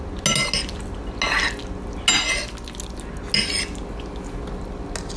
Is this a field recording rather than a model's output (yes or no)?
yes